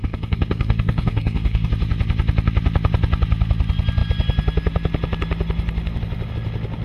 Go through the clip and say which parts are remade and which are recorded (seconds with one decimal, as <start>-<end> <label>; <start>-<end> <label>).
0.0-1.7 remade; 1.7-6.8 recorded